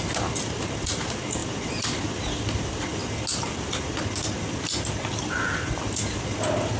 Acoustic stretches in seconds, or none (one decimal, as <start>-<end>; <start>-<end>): 0.0-6.8